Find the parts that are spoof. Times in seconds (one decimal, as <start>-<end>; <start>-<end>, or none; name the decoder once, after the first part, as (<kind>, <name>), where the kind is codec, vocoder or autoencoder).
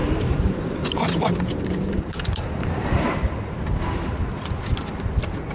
0.0-3.3 (vocoder, BigVGAN v2)